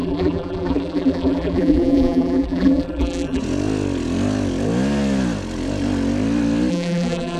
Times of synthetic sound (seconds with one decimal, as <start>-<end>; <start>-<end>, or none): 0.0-3.4; 6.7-7.4